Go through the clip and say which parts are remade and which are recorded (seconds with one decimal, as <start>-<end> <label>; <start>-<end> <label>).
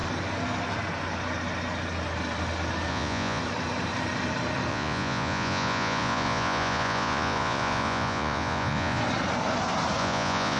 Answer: 0.0-2.9 recorded; 2.9-3.4 remade; 3.4-4.7 recorded; 4.7-9.0 remade; 9.0-10.0 recorded; 10.0-10.6 remade